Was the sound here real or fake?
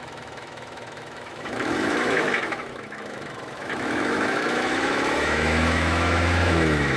fake